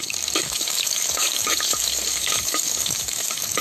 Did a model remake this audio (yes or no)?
yes